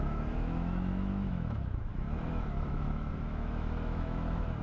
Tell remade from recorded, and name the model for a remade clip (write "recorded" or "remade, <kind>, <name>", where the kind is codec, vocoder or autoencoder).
remade, autoencoder, DAC-VAE